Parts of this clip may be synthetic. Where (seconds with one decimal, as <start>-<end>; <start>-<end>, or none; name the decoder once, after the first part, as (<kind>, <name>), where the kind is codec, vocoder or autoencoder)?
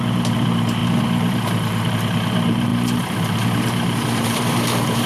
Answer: 0.0-5.1 (vocoder, BigVGAN v2)